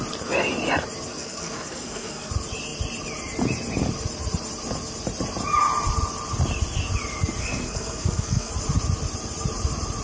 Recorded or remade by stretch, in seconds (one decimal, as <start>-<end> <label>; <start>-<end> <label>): 0.0-1.1 recorded; 1.1-2.3 remade; 2.3-7.4 recorded; 7.4-8.5 remade; 8.5-10.0 recorded